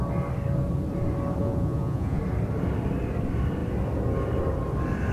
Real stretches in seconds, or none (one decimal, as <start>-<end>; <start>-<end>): 0.0-1.4; 2.2-5.1